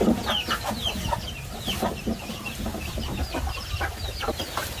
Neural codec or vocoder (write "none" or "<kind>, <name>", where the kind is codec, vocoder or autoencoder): vocoder, BigVGAN v2